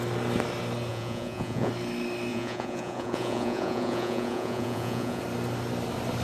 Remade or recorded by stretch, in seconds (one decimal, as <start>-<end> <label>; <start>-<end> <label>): 0.0-0.9 recorded; 0.9-1.7 remade; 1.7-2.3 recorded; 2.3-5.2 remade; 5.2-6.2 recorded